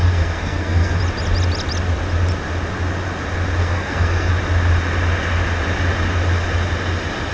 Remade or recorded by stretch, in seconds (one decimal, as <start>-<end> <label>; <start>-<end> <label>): 0.0-1.0 remade; 1.0-3.6 recorded; 3.6-4.3 remade; 4.3-7.3 recorded